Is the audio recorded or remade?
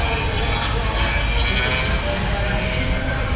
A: recorded